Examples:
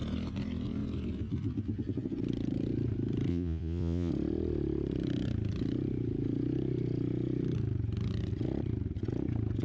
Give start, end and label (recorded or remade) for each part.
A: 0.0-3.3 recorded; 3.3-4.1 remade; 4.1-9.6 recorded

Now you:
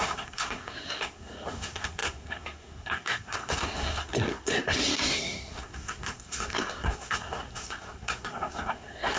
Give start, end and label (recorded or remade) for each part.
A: 0.0-9.2 remade

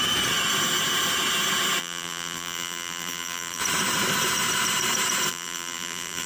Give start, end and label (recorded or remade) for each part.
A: 0.0-1.8 recorded; 1.8-3.6 remade; 3.6-5.3 recorded; 5.3-6.3 remade